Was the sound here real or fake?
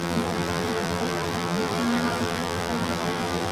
fake